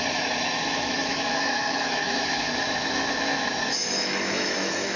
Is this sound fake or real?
fake